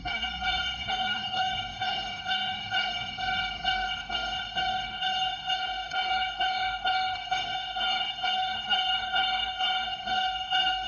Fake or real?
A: fake